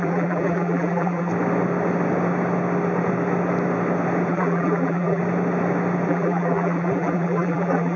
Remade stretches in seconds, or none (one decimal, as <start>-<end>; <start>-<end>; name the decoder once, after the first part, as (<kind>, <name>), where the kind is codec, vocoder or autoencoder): 0.0-1.3 (vocoder, BigVGAN v2); 4.3-5.2; 6.1-8.0